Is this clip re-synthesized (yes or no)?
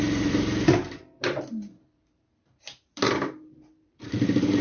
yes